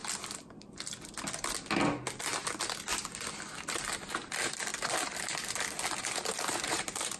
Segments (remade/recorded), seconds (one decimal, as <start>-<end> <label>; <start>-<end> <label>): 0.0-4.3 recorded; 4.3-4.7 remade; 4.7-5.9 recorded; 5.9-7.2 remade